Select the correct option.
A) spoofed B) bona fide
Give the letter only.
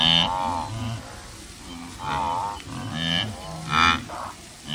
B